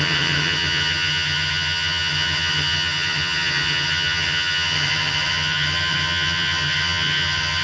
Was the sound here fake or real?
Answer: fake